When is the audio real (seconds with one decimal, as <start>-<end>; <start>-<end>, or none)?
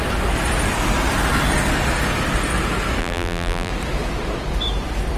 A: 0.0-3.0; 3.7-5.2